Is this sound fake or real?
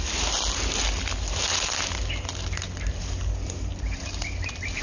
real